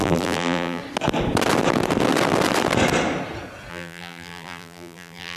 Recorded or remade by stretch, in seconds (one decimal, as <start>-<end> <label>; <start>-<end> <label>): 0.0-0.8 remade; 0.8-3.7 recorded; 3.7-5.4 remade